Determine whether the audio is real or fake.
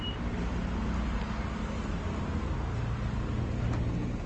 real